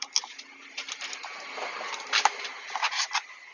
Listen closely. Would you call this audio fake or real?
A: real